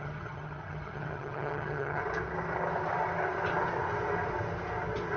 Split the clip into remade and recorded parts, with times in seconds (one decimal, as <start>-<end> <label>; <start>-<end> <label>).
0.0-2.0 remade; 2.0-5.2 recorded